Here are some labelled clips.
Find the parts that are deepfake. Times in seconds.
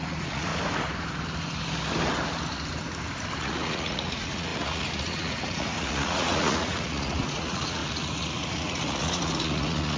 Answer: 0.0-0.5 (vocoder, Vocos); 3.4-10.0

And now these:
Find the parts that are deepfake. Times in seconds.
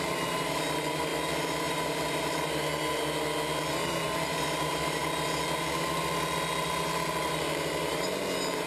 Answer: 0.0-1.1 (vocoder, BigVGAN v2); 1.7-2.7; 3.7-5.0; 7.2-8.7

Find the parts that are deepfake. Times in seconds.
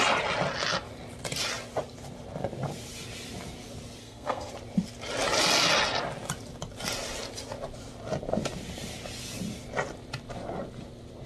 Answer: 4.0-4.5 (codec, SNAC)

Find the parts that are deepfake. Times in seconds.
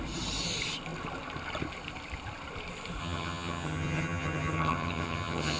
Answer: 3.0-5.6 (vocoder, HiFi-GAN)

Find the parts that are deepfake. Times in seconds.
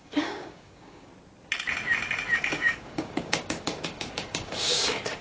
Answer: 0.0-1.1 (codec, DAC); 2.4-5.2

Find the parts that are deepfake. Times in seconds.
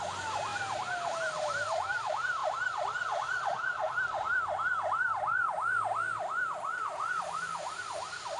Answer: 0.0-0.5 (vocoder, BigVGAN v2); 1.1-2.4; 7.2-8.4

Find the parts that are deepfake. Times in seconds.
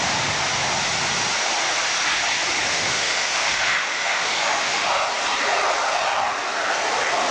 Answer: 2.7-4.9 (autoencoder, DAC-VAE)